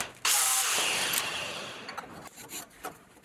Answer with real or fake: fake